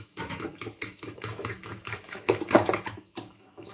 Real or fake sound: fake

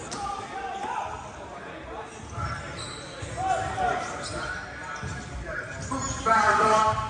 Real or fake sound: real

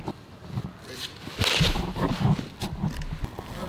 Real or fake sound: real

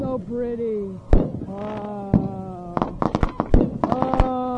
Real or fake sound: real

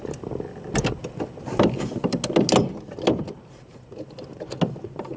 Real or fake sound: real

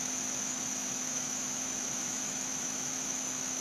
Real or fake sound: fake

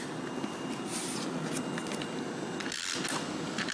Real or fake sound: real